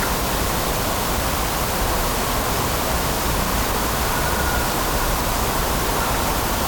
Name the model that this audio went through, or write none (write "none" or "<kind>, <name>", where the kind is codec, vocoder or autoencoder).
vocoder, BigVGAN v2